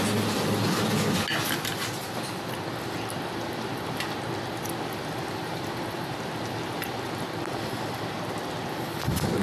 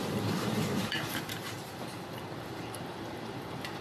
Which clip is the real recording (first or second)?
first